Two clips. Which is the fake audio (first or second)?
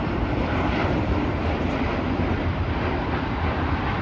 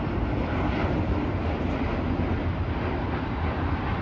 first